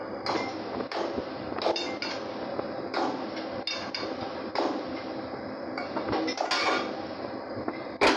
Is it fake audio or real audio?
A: real